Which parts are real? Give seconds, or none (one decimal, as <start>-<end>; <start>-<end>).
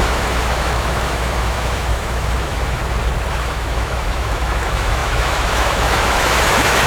2.8-3.3